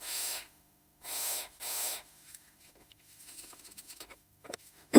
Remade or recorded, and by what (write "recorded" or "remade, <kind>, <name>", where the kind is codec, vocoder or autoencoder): remade, autoencoder, DAC-VAE